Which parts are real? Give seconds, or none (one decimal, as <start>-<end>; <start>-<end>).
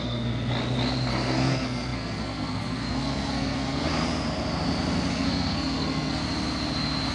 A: 0.5-1.1; 3.9-5.1; 6.2-7.1